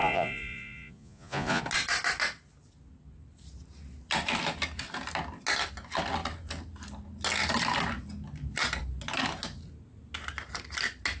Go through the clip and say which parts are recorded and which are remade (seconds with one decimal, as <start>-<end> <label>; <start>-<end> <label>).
0.0-1.6 remade; 1.6-11.2 recorded